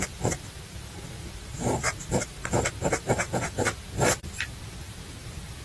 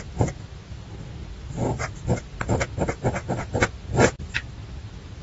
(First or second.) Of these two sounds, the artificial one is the first